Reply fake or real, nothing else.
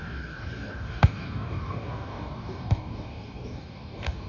fake